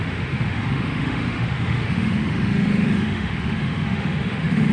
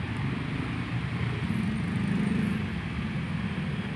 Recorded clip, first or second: second